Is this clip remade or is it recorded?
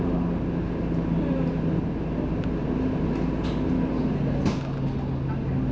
recorded